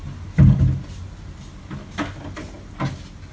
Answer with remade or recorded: recorded